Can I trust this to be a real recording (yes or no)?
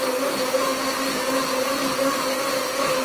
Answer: yes